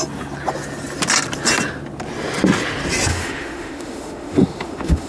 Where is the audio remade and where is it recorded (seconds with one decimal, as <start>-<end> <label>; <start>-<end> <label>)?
0.0-3.1 recorded; 3.1-5.1 remade